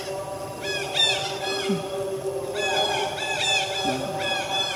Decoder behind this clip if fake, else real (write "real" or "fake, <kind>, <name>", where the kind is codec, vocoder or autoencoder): real